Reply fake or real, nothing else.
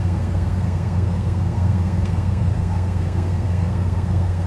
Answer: fake